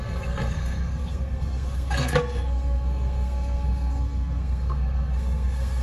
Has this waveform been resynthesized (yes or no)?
yes